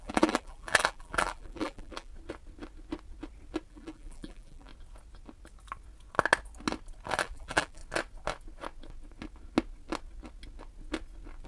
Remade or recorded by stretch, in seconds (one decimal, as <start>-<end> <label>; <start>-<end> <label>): 0.0-2.1 remade; 2.1-3.7 recorded; 3.7-4.7 remade; 4.7-7.2 recorded; 7.2-7.8 remade; 7.8-11.5 recorded